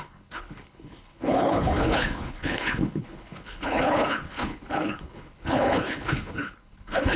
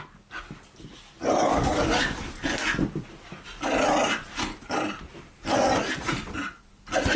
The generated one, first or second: first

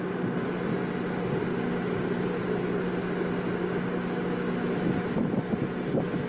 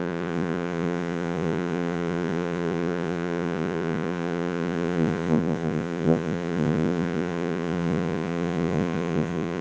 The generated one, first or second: second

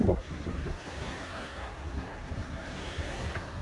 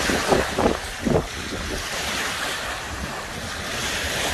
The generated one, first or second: first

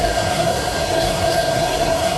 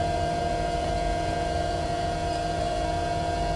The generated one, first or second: first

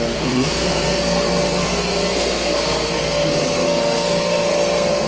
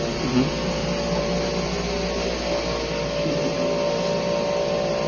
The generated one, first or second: first